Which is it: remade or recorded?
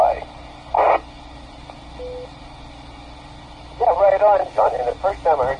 recorded